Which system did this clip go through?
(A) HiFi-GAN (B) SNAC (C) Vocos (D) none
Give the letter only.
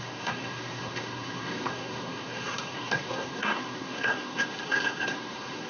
B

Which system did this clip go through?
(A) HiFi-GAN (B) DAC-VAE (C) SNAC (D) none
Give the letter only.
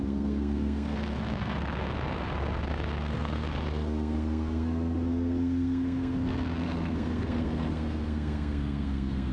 C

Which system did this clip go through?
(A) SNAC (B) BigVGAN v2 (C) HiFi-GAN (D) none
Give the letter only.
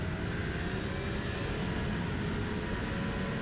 D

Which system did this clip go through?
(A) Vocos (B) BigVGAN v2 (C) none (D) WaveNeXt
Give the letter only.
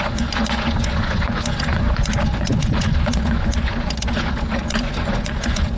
A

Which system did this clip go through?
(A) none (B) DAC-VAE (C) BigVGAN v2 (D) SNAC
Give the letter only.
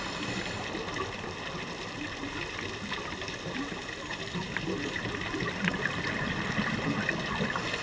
A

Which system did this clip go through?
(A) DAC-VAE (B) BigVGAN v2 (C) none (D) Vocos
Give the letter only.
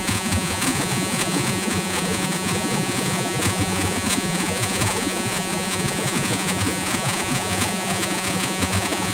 D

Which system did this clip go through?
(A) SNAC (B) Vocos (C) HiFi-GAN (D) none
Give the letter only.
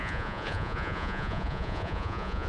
B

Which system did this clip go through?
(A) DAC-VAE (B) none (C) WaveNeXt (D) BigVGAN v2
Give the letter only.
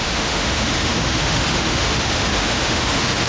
A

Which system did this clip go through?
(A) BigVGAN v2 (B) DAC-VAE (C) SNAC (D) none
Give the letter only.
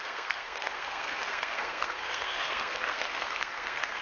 C